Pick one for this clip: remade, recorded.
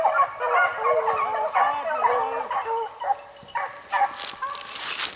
recorded